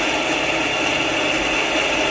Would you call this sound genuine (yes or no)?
yes